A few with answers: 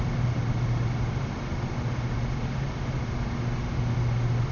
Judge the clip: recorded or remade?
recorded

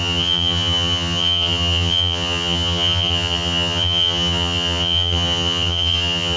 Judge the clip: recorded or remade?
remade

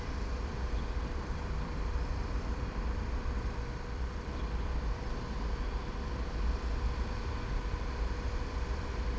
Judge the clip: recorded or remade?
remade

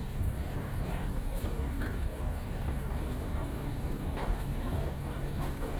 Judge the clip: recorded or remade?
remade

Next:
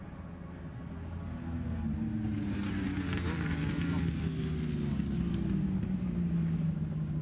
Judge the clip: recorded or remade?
recorded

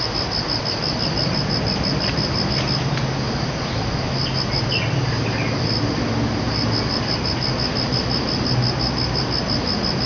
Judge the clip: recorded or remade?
recorded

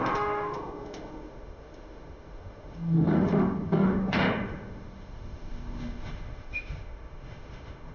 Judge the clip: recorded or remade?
remade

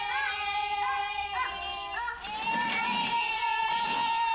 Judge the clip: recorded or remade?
remade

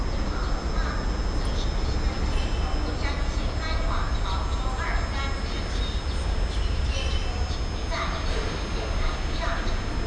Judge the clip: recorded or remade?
recorded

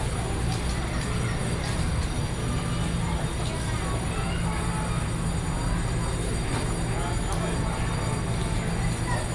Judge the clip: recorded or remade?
recorded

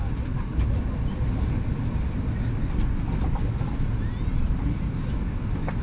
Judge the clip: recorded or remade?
recorded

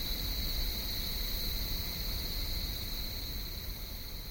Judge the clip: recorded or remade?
recorded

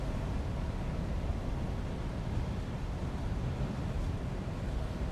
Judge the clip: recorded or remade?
recorded